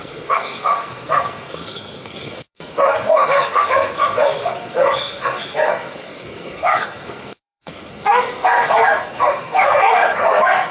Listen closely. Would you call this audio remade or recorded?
remade